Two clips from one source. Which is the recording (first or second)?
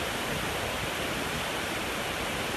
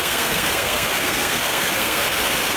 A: first